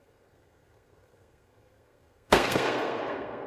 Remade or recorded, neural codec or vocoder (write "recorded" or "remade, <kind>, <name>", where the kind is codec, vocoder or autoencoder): remade, codec, SNAC